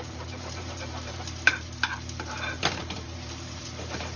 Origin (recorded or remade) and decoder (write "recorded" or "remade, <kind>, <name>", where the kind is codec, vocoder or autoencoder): remade, vocoder, BigVGAN v2